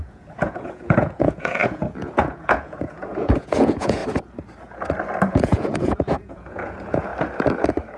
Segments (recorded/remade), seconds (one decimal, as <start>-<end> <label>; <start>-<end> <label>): 0.0-4.0 remade; 4.0-5.3 recorded; 5.3-7.1 remade; 7.1-8.0 recorded